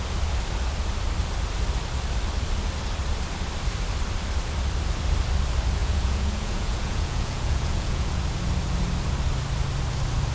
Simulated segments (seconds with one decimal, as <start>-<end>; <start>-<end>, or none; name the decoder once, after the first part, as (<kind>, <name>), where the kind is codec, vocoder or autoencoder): 5.8-8.2 (vocoder, Vocos)